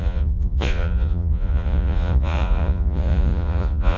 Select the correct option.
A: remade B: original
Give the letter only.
A